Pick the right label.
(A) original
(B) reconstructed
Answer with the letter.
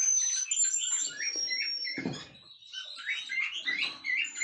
A